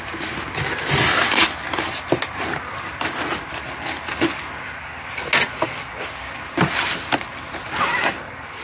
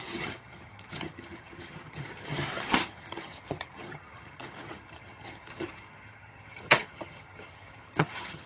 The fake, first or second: second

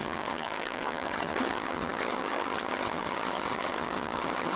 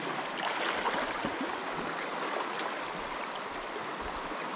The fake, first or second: first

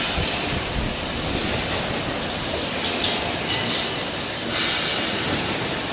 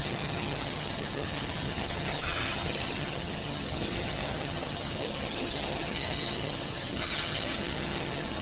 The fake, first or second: second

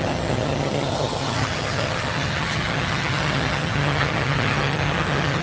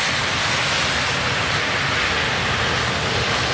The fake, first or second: first